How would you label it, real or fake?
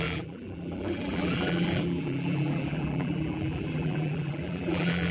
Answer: fake